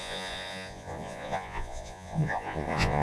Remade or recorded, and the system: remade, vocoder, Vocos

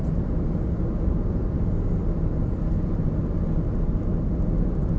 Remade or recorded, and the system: recorded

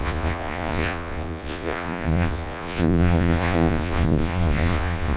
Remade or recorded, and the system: remade, vocoder, Vocos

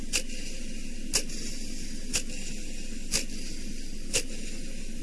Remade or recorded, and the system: recorded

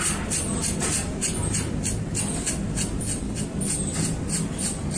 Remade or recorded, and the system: recorded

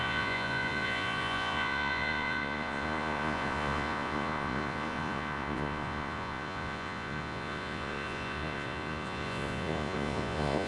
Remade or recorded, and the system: remade, vocoder, Vocos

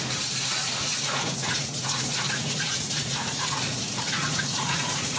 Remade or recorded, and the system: remade, vocoder, Vocos